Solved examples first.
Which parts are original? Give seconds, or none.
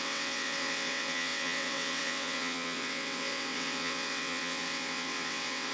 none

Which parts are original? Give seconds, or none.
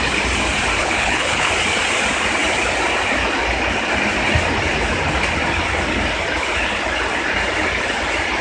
0.0-0.8; 1.5-8.4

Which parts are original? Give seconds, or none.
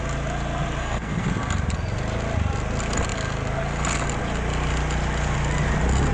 0.0-0.8; 1.3-6.1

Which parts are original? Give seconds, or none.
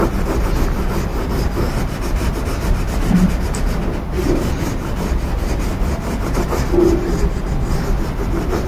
0.0-1.1; 3.3-5.7; 7.5-8.7